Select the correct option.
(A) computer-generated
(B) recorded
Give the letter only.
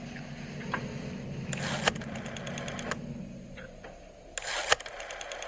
B